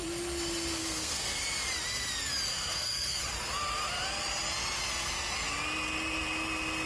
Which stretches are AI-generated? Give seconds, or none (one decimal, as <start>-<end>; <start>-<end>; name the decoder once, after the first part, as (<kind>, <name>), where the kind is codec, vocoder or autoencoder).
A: 0.8-1.4 (codec, SNAC); 2.5-3.2